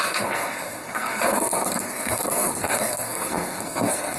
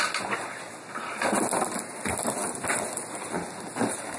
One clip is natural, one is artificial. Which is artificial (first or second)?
first